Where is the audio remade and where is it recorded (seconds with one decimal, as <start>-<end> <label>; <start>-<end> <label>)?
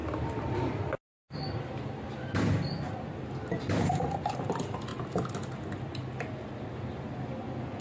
0.0-7.8 recorded